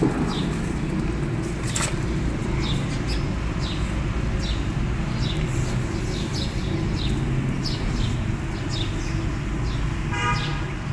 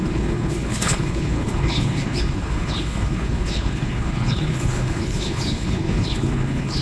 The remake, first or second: second